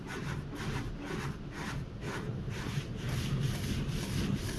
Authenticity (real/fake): real